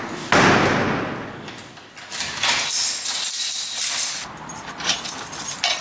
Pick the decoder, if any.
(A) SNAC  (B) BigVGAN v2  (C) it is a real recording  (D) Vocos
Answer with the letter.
C